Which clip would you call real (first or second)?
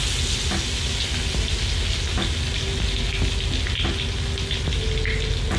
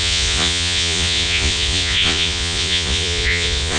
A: first